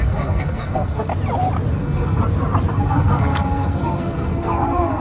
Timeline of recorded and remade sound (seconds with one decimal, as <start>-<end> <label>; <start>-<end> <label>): 0.0-1.1 remade; 1.1-1.7 recorded; 1.7-2.2 remade; 2.2-2.7 recorded; 2.7-5.0 remade